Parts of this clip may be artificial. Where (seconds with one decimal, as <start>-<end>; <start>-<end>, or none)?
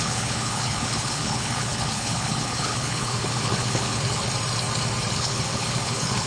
0.0-4.2; 5.1-6.3